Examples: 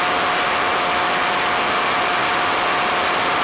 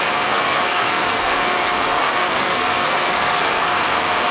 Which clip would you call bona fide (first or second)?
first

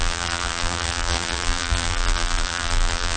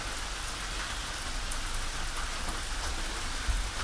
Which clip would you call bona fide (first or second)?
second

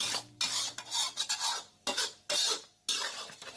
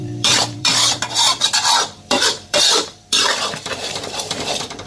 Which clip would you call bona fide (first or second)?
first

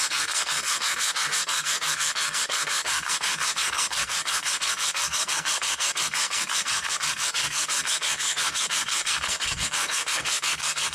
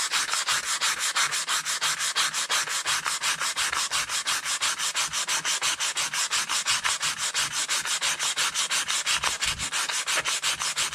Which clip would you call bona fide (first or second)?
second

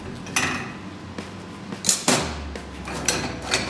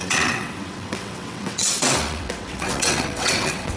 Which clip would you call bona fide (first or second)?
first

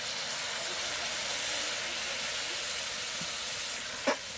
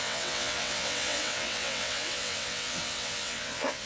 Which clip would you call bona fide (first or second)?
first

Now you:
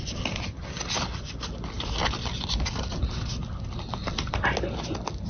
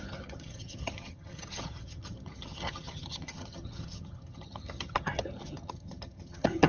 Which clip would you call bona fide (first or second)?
first